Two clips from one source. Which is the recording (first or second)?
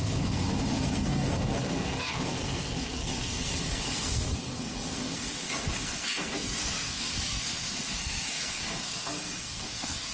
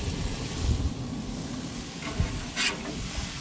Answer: second